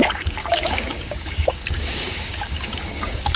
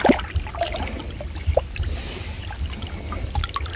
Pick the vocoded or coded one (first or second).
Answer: first